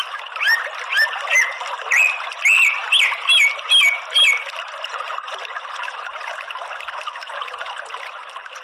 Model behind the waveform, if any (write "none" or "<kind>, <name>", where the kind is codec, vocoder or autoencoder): none